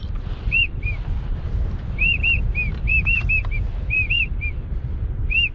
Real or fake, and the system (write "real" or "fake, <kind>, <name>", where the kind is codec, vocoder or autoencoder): real